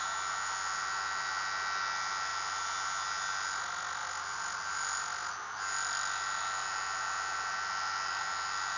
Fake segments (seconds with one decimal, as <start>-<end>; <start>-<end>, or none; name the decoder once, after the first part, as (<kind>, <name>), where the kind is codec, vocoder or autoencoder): none